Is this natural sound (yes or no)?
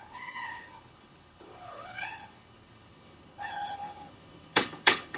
no